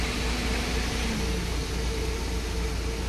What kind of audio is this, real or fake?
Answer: real